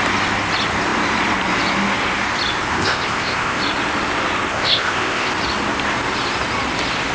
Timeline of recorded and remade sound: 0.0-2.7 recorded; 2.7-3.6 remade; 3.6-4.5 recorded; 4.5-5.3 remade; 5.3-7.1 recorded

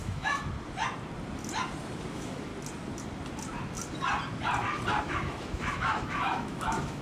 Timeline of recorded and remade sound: 0.0-0.4 remade; 0.4-2.1 recorded; 2.1-2.5 remade; 2.5-5.0 recorded; 5.0-7.0 remade